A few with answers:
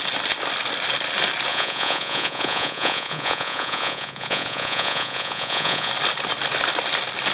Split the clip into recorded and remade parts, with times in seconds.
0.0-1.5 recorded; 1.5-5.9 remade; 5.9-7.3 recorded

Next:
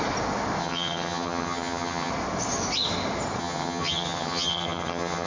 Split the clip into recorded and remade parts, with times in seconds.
0.0-0.6 recorded; 0.6-2.1 remade; 2.1-3.4 recorded; 3.4-5.3 remade

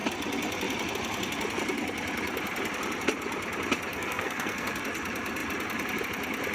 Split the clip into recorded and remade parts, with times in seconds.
0.0-3.9 recorded; 3.9-4.7 remade; 4.7-6.5 recorded

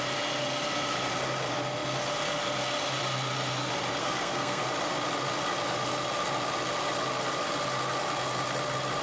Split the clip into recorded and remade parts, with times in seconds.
0.0-4.0 recorded; 4.0-4.6 remade; 4.6-9.0 recorded

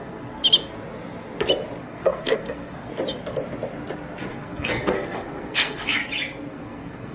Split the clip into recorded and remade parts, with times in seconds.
0.0-0.4 remade; 0.4-1.8 recorded; 1.8-2.9 remade; 2.9-4.3 recorded; 4.3-6.0 remade; 6.0-6.5 recorded; 6.5-7.1 remade